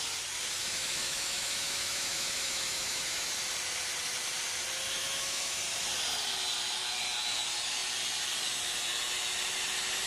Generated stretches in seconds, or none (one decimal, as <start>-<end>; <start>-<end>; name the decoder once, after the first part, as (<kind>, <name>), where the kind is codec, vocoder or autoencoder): 0.6-3.3 (autoencoder, DAC-VAE); 5.0-5.6